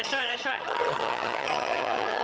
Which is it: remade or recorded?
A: remade